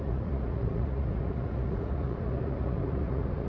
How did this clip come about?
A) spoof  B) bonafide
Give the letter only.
A